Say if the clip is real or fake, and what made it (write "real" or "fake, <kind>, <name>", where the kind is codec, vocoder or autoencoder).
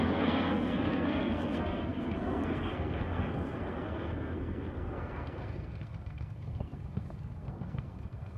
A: fake, codec, SNAC